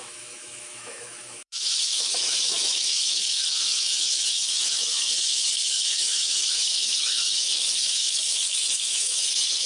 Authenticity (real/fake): fake